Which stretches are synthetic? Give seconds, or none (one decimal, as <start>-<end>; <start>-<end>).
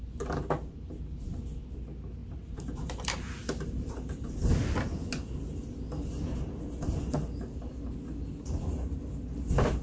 2.2-4.3